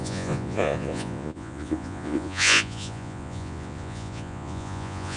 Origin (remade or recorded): remade